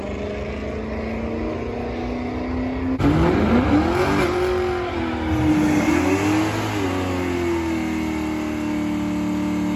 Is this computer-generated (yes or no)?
no